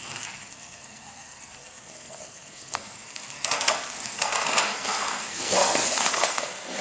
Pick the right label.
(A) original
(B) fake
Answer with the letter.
B